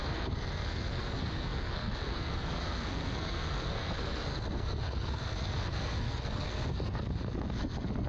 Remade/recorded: remade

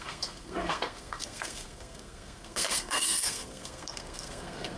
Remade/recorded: remade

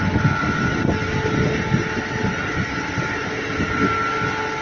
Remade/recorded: recorded